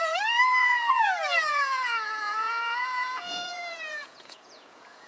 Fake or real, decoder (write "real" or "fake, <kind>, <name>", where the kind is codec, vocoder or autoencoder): fake, vocoder, Vocos